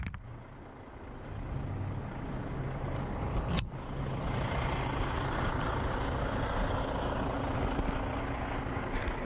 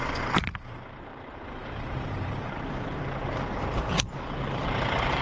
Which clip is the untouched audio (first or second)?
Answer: first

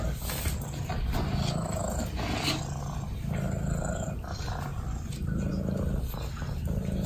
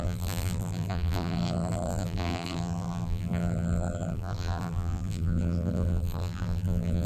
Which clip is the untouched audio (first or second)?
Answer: first